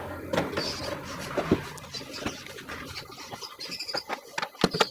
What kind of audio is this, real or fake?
real